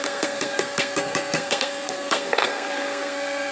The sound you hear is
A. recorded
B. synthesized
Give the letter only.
B